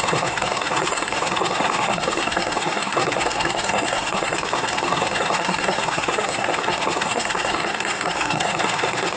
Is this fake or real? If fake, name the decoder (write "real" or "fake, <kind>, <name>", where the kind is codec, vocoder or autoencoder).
fake, codec, SNAC